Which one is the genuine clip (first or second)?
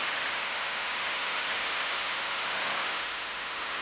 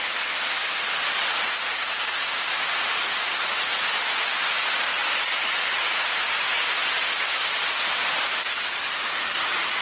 second